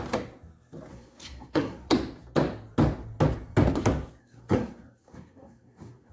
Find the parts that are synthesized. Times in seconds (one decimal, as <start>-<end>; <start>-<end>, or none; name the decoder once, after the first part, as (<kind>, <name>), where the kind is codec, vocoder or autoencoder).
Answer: 0.9-1.9 (codec, SNAC); 4.2-6.1